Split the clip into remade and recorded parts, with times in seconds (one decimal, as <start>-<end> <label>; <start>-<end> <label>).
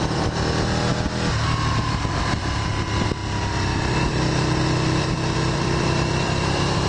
0.0-0.9 remade; 0.9-2.1 recorded; 2.1-3.2 remade; 3.2-5.0 recorded; 5.0-6.9 remade